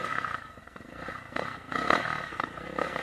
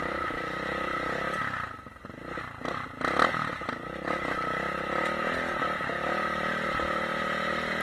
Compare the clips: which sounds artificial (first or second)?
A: first